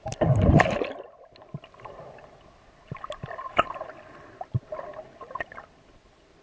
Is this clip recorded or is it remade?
recorded